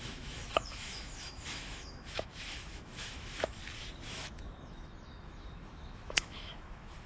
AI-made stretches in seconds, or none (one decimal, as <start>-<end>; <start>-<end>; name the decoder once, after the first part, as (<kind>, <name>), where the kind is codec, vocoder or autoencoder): 0.0-3.6 (autoencoder, DAC-VAE); 4.1-7.1